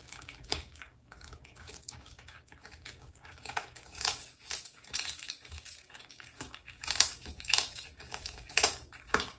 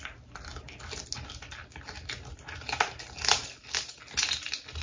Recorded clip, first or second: second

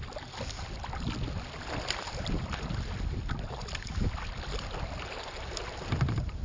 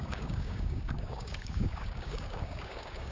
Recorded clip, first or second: first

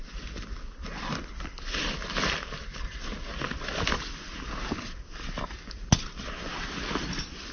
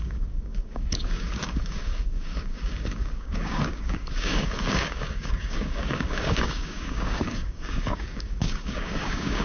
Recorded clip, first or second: first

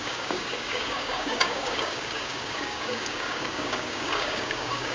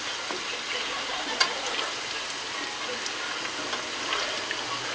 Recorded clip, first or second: second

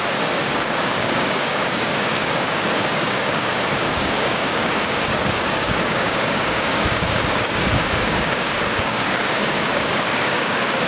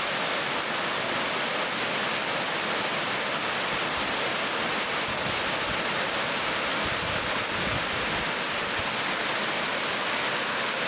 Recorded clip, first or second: second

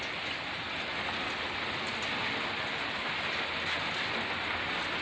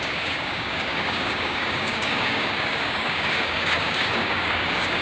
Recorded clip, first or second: first